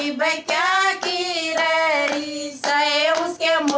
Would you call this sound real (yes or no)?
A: yes